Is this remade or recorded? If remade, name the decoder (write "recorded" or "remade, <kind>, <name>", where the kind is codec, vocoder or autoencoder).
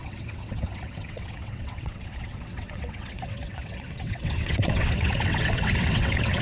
remade, vocoder, WaveNeXt